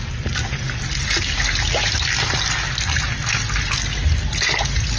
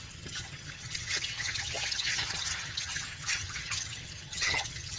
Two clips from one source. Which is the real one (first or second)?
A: first